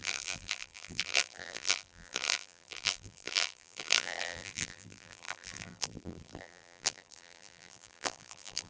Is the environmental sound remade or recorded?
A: remade